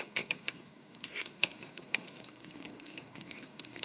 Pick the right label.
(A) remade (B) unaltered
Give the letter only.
A